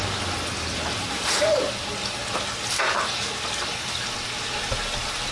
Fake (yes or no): no